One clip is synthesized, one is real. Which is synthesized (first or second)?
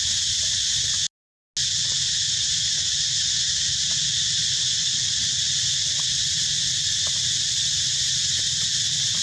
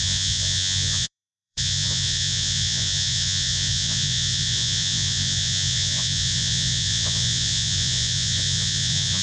second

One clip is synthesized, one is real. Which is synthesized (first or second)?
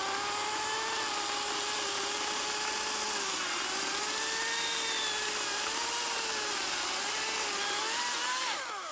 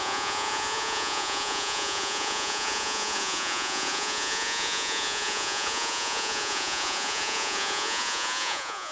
second